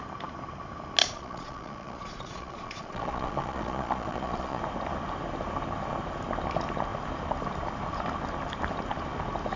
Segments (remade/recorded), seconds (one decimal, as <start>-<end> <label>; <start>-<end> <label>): 0.0-1.0 recorded; 1.0-4.6 remade; 4.6-9.6 recorded